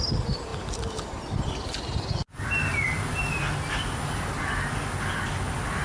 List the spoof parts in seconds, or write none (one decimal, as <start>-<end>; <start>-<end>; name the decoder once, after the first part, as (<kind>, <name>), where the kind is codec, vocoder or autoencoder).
none